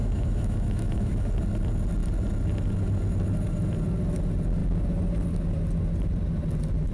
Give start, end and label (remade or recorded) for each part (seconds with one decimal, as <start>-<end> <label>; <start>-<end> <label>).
0.0-1.3 remade; 1.3-6.9 recorded